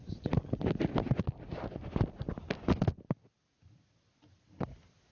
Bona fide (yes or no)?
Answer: yes